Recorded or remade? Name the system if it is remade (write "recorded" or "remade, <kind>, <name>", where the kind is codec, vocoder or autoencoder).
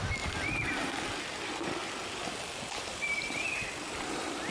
recorded